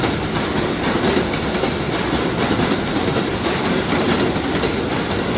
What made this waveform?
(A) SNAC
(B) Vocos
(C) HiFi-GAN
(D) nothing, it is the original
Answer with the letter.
D